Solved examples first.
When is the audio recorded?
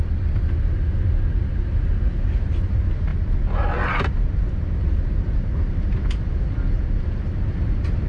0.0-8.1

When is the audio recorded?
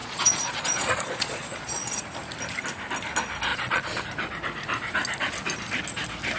2.0-3.5; 4.0-6.4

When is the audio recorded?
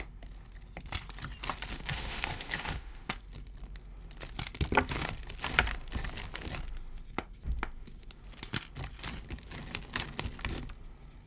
0.0-1.7; 3.1-11.3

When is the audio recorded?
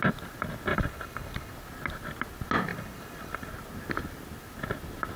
0.0-0.7; 1.5-2.7; 3.5-5.2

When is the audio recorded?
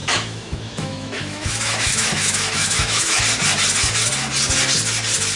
3.2-5.4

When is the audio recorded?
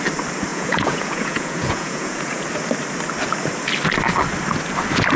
0.0-0.5; 2.4-5.2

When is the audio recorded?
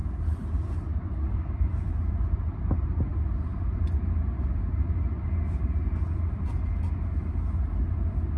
0.0-0.9; 1.5-8.4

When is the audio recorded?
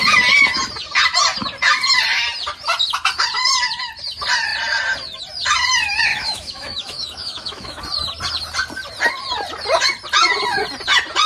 0.0-6.1; 7.8-11.3